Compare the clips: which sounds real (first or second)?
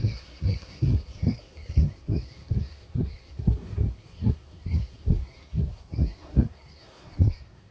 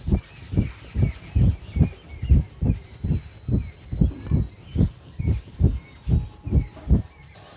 second